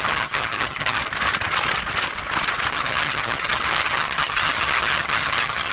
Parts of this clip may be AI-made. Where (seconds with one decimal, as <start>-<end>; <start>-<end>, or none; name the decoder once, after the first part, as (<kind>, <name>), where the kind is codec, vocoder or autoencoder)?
0.0-1.0 (vocoder, HiFi-GAN); 2.7-5.7